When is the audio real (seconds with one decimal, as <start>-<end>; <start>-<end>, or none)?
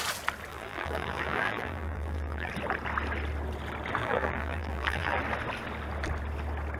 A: 0.0-0.5; 2.5-4.0; 5.2-6.8